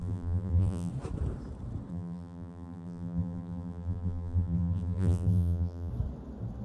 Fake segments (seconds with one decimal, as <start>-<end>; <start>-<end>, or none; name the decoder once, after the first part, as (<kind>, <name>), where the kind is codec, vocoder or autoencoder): 0.0-0.9 (vocoder, BigVGAN v2); 1.9-5.9